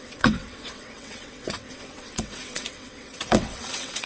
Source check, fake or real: fake